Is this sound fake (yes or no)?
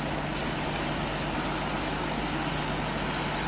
no